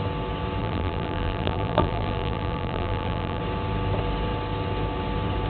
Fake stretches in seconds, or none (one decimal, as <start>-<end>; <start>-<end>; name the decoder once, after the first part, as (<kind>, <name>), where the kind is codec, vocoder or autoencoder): 0.6-3.4 (vocoder, BigVGAN v2)